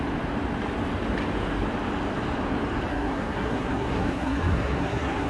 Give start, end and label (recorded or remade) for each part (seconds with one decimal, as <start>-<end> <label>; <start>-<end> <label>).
0.0-2.9 recorded; 2.9-5.3 remade